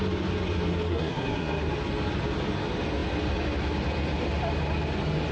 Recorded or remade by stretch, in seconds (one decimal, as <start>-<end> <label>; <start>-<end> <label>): 0.0-0.9 recorded; 0.9-1.7 remade; 1.7-5.3 recorded